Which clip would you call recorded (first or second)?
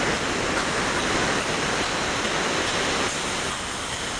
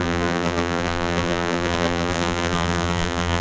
first